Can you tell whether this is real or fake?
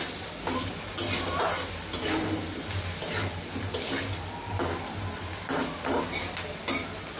real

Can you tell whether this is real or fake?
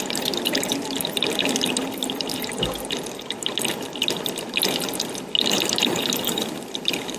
real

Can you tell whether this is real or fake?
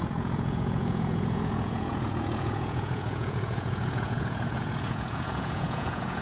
fake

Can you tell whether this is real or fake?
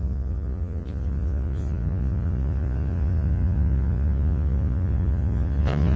fake